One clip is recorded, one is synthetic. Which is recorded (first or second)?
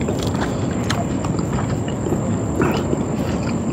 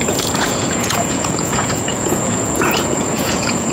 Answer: first